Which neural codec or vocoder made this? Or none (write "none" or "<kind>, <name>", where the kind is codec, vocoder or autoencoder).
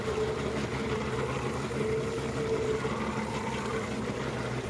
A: none